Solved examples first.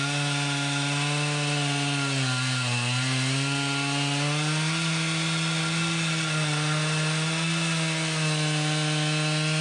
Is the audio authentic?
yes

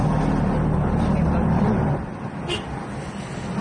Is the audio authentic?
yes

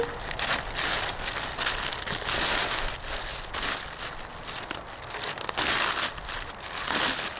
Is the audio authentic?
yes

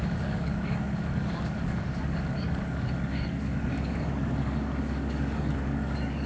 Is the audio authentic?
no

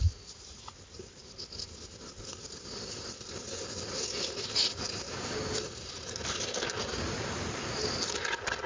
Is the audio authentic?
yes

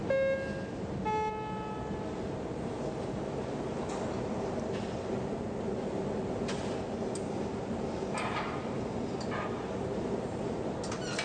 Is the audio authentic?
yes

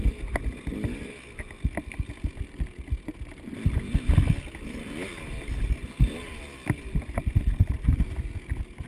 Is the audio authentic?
yes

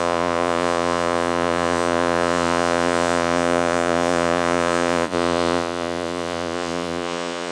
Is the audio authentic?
no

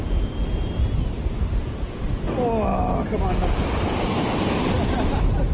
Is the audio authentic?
yes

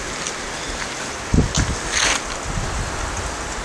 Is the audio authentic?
yes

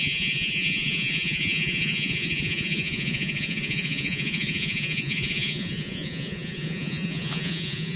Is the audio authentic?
no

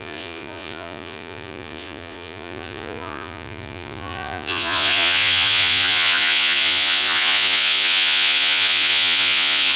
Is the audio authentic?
no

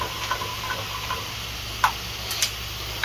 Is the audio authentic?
yes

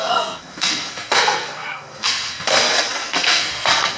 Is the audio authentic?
no